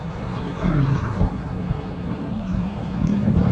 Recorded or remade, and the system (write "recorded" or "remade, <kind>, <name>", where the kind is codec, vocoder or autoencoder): remade, codec, SNAC